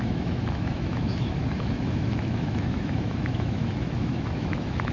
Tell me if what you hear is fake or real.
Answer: fake